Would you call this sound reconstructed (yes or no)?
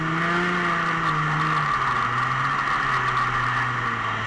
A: no